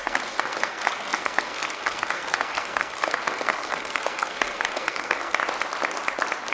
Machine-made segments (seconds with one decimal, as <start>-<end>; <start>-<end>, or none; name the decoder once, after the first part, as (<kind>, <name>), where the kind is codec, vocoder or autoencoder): 0.0-5.4 (codec, SNAC)